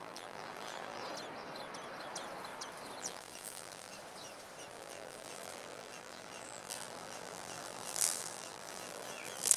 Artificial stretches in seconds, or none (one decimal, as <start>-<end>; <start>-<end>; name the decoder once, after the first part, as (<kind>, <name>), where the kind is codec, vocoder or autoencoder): 0.0-1.0 (vocoder, BigVGAN v2); 3.0-3.9; 4.7-9.6

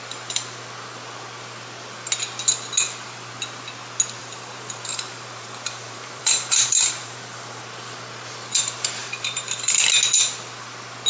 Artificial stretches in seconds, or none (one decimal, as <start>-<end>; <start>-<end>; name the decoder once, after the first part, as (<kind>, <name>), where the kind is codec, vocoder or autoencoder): 4.2-7.6 (vocoder, BigVGAN v2); 9.0-9.8